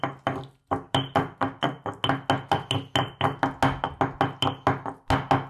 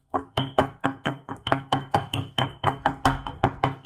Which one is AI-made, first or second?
second